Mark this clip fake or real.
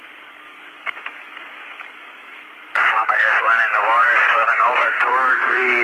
fake